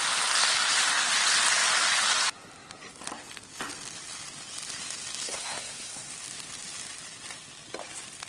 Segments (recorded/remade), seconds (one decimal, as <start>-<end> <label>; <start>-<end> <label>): 0.0-5.2 recorded; 5.2-6.1 remade; 6.1-8.3 recorded